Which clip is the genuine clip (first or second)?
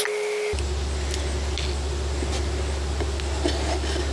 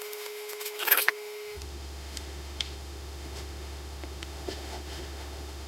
first